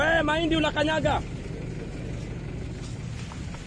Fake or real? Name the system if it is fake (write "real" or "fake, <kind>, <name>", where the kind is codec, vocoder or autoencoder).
real